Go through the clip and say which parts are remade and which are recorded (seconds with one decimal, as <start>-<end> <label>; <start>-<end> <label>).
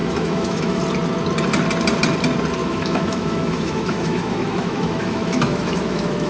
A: 0.0-0.8 remade; 0.8-2.6 recorded; 2.6-6.3 remade